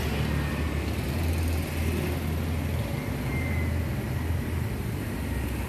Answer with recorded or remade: recorded